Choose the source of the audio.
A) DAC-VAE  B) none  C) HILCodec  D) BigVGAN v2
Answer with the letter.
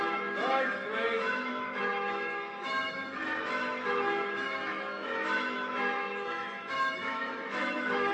A